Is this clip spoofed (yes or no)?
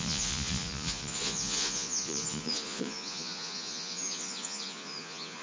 yes